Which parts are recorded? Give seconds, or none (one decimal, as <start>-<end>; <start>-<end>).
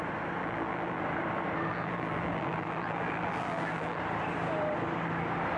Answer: 0.0-0.4; 1.0-1.7; 4.0-5.6